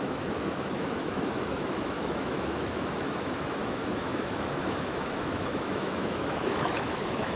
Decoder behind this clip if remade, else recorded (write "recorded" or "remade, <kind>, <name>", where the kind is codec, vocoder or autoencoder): remade, autoencoder, DAC-VAE